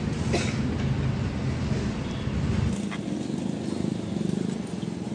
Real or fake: real